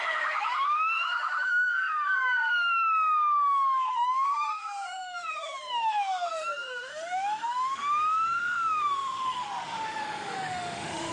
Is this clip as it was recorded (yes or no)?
no